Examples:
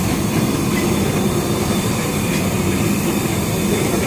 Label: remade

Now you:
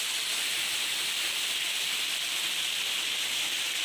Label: recorded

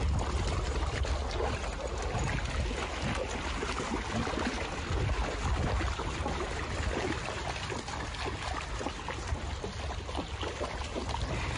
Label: recorded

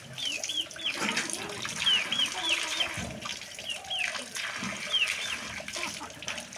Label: recorded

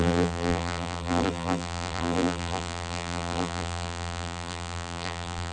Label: remade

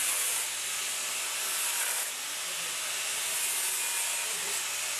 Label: recorded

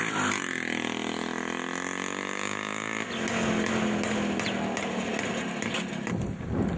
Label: recorded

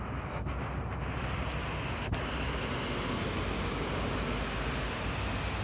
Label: recorded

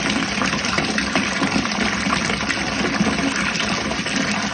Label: recorded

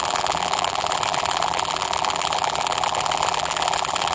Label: remade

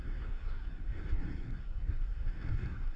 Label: remade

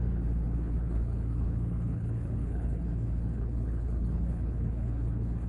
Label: remade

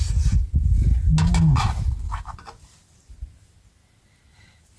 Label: recorded